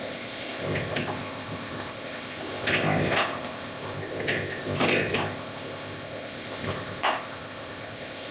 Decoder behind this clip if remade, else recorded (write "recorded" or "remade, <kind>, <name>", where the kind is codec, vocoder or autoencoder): remade, codec, ZipCodec